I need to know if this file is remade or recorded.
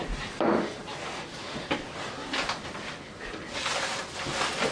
recorded